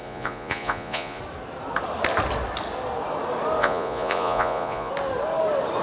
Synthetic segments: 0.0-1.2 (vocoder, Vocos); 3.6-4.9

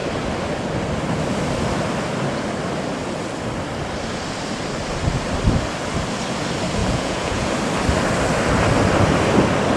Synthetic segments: 6.8-7.5 (vocoder, Vocos)

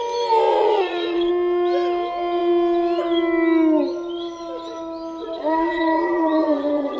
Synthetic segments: 0.5-1.3 (vocoder, Vocos); 5.2-7.0